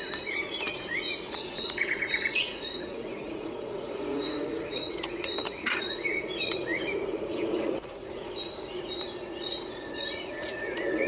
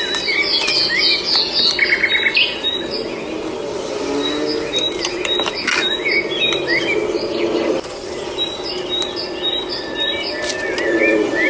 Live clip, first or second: second